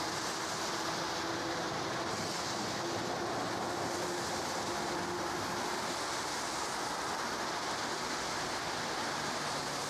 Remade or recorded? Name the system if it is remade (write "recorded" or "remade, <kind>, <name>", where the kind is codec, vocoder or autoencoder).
recorded